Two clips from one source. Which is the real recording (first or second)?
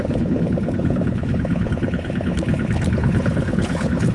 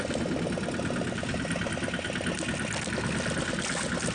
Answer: second